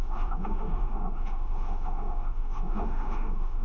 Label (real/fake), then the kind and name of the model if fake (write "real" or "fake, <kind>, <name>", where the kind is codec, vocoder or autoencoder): fake, autoencoder, DAC-VAE